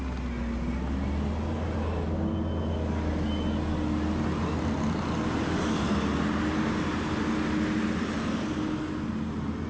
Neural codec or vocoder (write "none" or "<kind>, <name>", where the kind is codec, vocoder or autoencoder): none